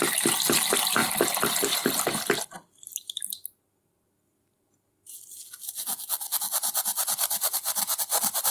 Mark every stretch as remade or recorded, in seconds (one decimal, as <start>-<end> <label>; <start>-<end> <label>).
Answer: 0.0-8.5 recorded